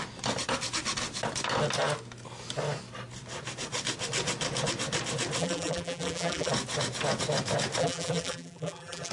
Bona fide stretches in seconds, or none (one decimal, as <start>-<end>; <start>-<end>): 0.0-5.4; 6.5-7.8